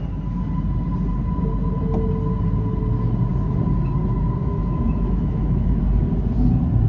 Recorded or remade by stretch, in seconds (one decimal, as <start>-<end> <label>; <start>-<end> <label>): 0.0-4.4 recorded; 4.4-5.8 remade; 5.8-6.9 recorded